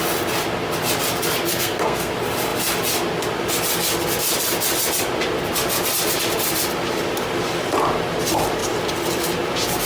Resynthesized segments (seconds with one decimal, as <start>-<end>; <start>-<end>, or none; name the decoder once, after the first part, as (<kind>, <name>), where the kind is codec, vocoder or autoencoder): 1.5-2.1 (codec, SNAC)